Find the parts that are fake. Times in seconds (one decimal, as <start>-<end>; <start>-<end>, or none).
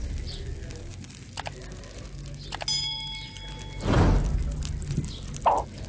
none